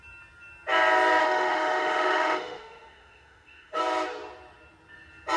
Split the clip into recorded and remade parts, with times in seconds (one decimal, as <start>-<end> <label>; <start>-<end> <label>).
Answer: 0.0-1.2 recorded; 1.2-3.8 remade; 3.8-5.4 recorded